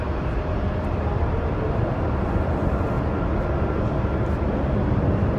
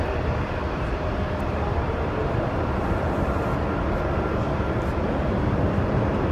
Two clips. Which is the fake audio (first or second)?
second